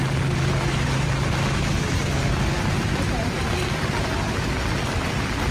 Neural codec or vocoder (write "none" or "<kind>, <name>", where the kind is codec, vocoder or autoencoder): none